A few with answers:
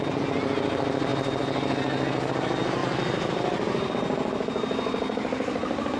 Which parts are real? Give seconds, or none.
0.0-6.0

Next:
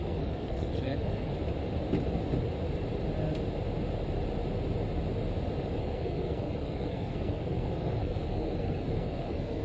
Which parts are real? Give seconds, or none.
1.3-5.8

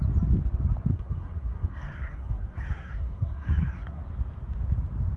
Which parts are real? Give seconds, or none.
0.0-0.9; 4.0-5.2

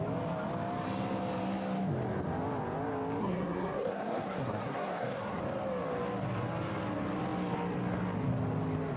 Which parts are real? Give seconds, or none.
0.0-3.2; 5.4-9.0

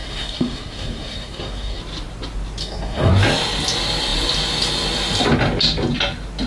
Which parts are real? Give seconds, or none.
1.8-2.6; 3.1-6.5

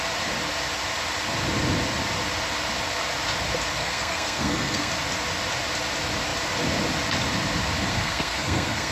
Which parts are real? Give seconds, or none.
0.0-3.8; 4.9-7.9

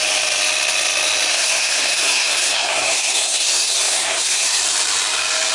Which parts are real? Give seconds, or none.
0.0-1.3; 4.6-5.5